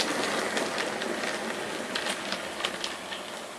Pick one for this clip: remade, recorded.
recorded